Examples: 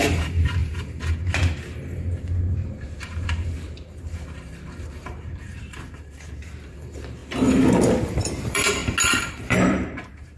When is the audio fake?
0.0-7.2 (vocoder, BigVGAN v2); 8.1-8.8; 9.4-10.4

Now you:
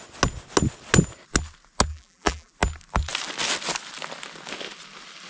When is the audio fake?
1.9-2.5 (vocoder, BigVGAN v2)

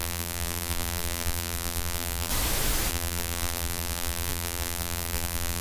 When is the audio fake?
0.0-2.3 (vocoder, BigVGAN v2); 2.9-5.6